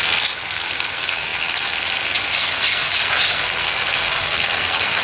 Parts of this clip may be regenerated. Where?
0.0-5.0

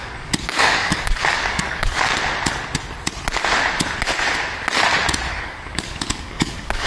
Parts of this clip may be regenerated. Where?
0.0-2.1; 5.3-6.9

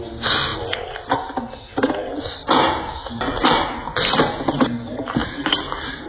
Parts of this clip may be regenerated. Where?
5.2-6.1